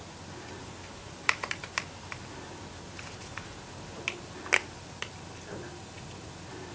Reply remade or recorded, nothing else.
recorded